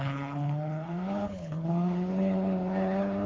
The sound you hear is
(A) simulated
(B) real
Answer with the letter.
A